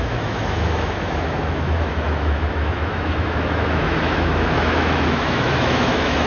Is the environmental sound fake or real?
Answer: fake